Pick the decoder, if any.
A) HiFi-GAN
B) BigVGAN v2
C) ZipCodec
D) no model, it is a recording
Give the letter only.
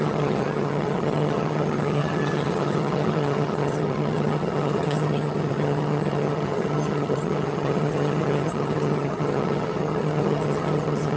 A